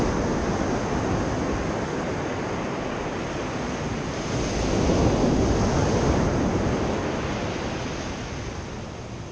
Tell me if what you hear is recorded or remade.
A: recorded